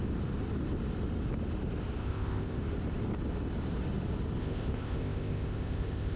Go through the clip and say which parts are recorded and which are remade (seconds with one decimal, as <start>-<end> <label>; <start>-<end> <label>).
0.0-2.0 recorded; 2.0-2.6 remade; 2.6-4.4 recorded; 4.4-6.2 remade